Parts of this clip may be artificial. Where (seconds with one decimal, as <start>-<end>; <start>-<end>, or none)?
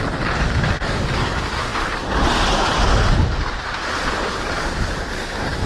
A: none